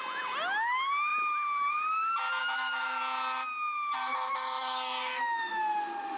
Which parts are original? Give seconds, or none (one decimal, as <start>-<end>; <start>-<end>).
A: 0.0-2.4; 3.0-4.1